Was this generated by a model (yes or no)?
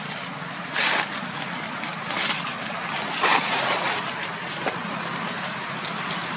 yes